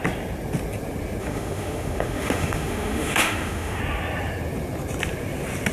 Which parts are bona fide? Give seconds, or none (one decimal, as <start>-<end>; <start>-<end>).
0.0-1.2; 3.8-5.7